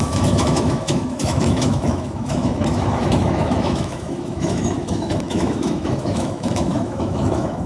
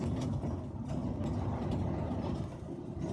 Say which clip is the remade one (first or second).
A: first